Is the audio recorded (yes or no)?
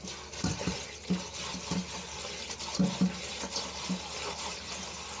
yes